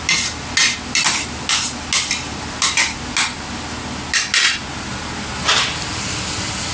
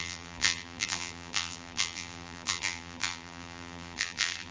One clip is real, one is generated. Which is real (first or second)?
first